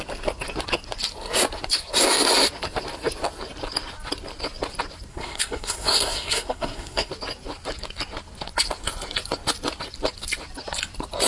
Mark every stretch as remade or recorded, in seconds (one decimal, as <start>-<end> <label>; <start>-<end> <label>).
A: 0.0-5.1 recorded; 5.1-7.1 remade; 7.1-11.3 recorded